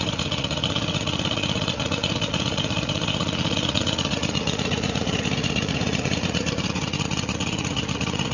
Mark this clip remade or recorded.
remade